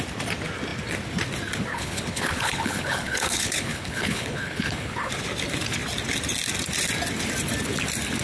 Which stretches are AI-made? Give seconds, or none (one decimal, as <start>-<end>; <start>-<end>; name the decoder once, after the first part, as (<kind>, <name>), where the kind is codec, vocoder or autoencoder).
1.7-5.1 (codec, HILCodec)